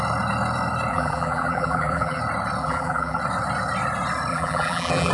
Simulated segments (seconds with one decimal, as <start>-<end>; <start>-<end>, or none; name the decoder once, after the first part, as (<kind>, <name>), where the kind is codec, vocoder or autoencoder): 0.9-2.2 (vocoder, BigVGAN v2); 2.6-3.2; 4.3-5.1